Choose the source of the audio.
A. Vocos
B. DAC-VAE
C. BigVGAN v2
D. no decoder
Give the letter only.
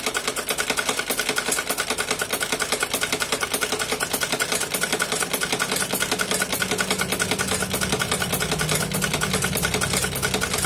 D